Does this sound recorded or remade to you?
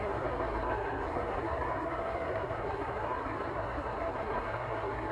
remade